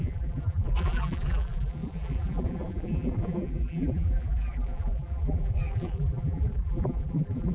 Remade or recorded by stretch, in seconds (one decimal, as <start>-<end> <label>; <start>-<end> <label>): 0.0-7.5 remade